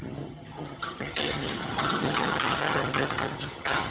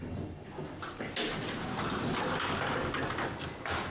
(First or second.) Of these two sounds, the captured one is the second